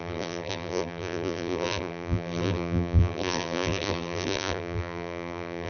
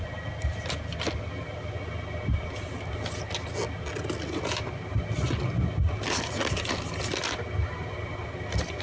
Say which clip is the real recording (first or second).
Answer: second